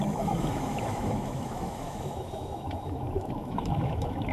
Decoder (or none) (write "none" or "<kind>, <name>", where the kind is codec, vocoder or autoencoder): autoencoder, DAC-VAE